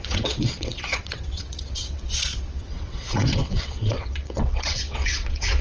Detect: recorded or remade remade